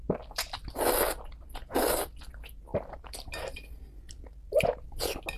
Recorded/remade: recorded